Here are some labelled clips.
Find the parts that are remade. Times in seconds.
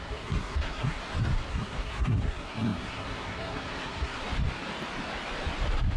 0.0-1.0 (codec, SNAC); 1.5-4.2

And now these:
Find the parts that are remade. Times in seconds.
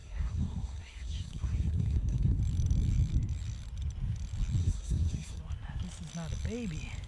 0.0-2.4 (codec, SNAC); 4.6-5.4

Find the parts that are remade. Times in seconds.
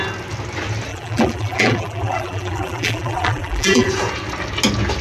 0.9-3.9 (vocoder, BigVGAN v2)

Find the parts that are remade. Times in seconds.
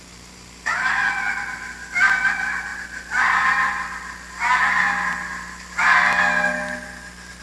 none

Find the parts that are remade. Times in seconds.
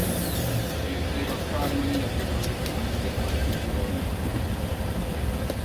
none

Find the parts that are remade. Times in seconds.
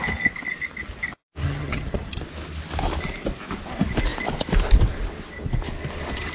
1.4-2.2 (vocoder, HiFi-GAN)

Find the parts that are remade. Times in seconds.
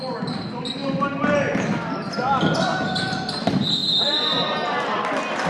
none